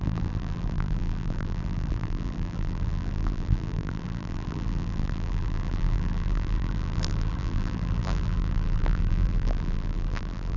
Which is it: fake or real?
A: fake